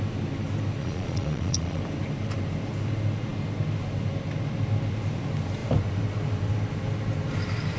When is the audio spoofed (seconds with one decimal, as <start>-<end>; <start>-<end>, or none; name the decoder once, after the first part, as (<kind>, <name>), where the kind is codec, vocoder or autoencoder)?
0.8-1.8 (vocoder, Vocos)

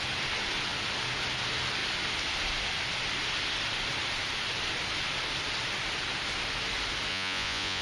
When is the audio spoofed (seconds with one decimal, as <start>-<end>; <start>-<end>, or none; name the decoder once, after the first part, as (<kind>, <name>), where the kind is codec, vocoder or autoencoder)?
7.1-7.8 (vocoder, Vocos)

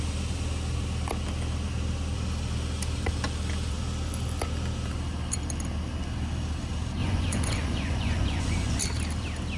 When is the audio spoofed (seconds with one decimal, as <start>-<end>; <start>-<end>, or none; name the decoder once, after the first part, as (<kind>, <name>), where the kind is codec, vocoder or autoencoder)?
7.0-8.8 (vocoder, Vocos)

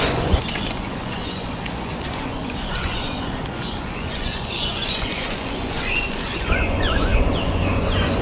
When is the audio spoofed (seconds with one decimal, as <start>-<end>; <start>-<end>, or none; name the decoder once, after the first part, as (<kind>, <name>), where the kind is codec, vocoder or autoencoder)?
0.0-8.2 (vocoder, Vocos)